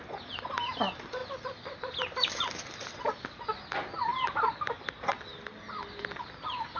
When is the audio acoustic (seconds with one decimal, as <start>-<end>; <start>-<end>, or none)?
0.0-6.8